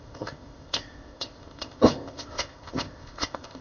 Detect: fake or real fake